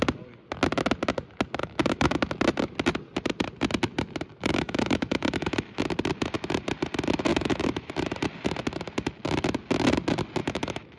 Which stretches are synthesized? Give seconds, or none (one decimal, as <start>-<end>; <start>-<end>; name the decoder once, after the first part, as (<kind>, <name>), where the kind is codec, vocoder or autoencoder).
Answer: 1.6-2.2 (autoencoder, DAC-VAE); 4.3-5.8; 7.3-7.9; 10.4-11.0